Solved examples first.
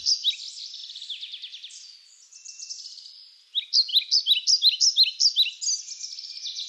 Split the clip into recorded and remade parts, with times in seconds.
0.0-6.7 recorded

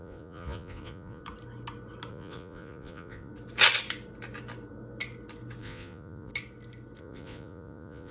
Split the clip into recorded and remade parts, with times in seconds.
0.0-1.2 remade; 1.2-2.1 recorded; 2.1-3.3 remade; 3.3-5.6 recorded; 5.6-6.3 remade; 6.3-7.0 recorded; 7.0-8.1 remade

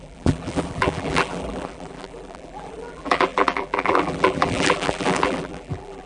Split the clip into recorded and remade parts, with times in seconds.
0.0-6.1 remade

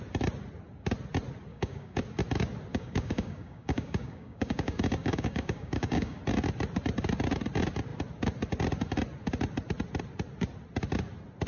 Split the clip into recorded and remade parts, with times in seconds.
0.0-1.5 recorded; 1.5-2.0 remade; 2.0-2.7 recorded; 2.7-6.2 remade; 6.2-11.5 recorded

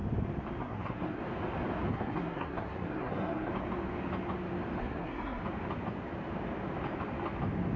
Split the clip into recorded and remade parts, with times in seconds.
0.0-0.6 recorded; 0.6-1.2 remade; 1.2-1.9 recorded; 1.9-3.5 remade; 3.5-4.8 recorded; 4.8-5.4 remade; 5.4-7.8 recorded

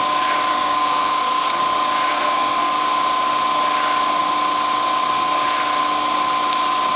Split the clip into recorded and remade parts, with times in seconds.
0.0-0.5 recorded; 0.5-1.6 remade; 1.6-2.1 recorded; 2.1-2.7 remade; 2.7-7.0 recorded

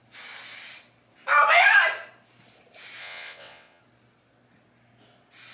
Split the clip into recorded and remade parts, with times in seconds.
0.0-3.0 recorded; 3.0-3.8 remade; 3.8-5.5 recorded

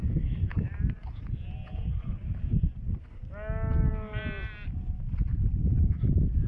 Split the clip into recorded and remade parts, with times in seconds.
0.0-6.5 recorded